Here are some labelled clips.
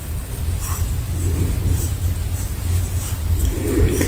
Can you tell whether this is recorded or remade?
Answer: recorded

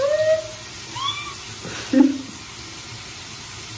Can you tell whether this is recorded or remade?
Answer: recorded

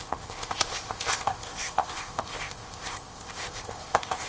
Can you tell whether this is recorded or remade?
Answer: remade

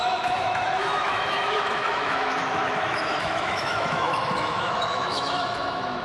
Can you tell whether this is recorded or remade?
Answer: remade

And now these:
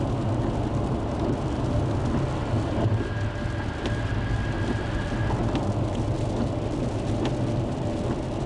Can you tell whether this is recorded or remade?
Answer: recorded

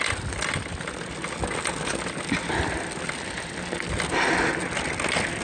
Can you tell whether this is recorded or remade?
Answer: recorded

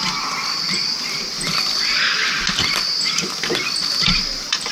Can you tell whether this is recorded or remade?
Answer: recorded